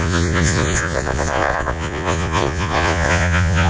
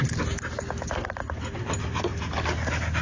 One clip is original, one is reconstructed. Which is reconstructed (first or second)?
first